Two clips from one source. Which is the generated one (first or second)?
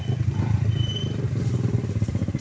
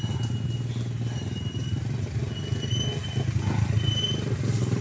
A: first